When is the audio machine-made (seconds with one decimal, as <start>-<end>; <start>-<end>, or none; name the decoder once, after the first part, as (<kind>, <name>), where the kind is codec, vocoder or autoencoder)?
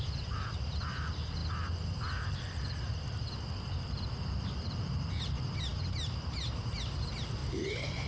0.0-5.7 (vocoder, BigVGAN v2); 6.5-7.4